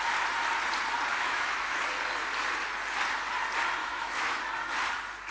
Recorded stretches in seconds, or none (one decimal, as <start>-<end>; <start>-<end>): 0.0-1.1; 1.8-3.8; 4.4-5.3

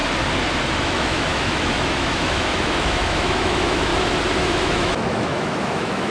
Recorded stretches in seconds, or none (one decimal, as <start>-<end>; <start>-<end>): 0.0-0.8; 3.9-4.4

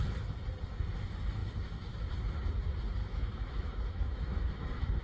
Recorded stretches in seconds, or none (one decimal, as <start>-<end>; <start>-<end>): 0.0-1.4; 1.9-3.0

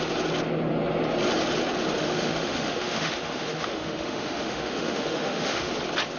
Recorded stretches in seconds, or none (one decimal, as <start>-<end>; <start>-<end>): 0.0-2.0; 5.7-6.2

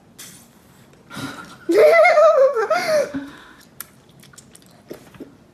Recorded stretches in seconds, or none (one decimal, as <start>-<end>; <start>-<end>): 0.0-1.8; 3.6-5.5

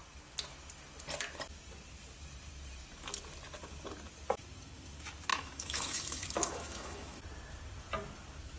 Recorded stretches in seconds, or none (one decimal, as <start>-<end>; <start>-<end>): 0.0-5.3; 7.2-8.6